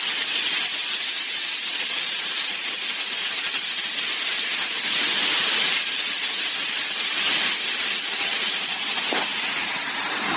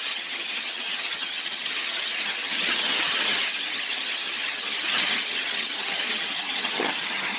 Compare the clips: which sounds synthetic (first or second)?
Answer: second